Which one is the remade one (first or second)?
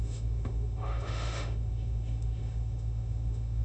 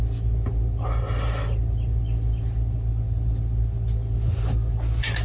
first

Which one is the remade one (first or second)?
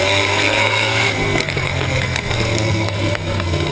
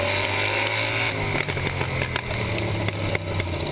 first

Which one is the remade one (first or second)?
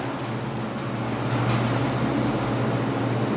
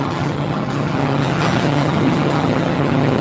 second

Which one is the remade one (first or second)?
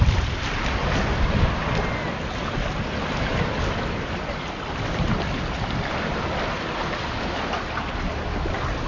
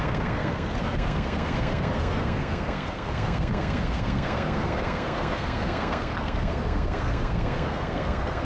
second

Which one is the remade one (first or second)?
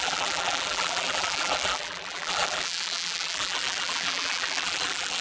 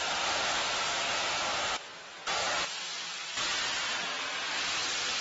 first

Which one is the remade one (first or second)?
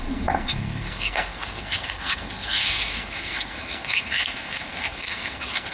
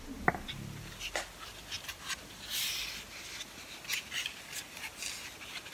first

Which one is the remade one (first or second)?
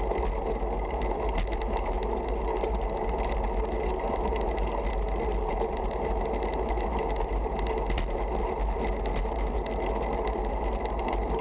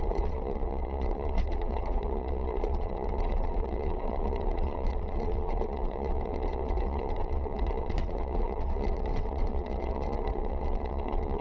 second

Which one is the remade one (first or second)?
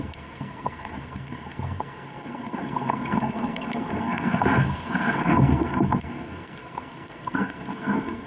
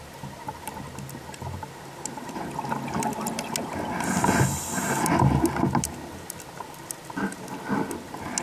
first